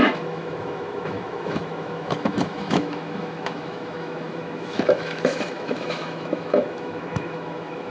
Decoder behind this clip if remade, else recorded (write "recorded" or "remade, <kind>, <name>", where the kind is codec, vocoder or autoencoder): remade, autoencoder, DAC-VAE